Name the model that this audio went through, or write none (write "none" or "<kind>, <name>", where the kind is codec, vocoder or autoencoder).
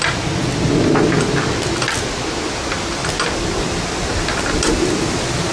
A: none